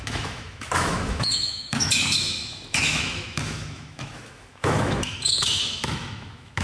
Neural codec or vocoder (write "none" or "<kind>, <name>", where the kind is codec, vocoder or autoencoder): autoencoder, DAC-VAE